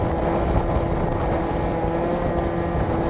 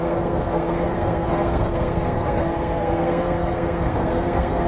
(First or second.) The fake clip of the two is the second